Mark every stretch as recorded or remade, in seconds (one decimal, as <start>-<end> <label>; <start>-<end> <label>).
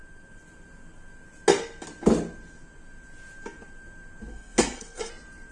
0.0-4.3 recorded; 4.3-5.1 remade; 5.1-5.5 recorded